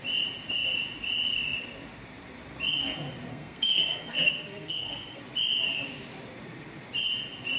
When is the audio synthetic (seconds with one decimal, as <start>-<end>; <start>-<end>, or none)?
3.3-5.2